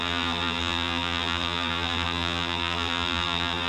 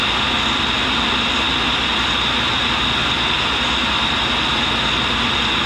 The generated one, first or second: first